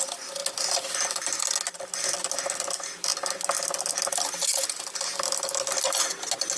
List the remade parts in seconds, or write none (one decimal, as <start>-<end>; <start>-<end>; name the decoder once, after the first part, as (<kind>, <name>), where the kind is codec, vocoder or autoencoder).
none